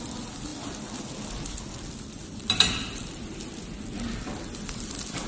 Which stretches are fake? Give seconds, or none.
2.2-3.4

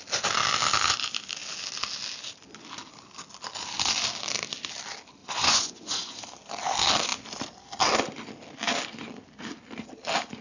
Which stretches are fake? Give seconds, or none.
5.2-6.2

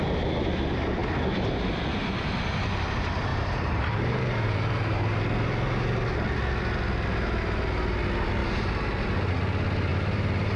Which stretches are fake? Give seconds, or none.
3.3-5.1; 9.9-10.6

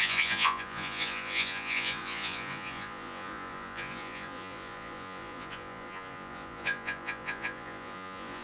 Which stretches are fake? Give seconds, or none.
0.0-8.4

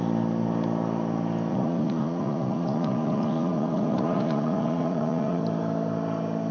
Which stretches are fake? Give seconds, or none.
1.5-5.4

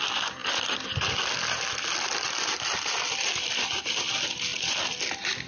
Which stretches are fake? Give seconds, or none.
4.5-5.1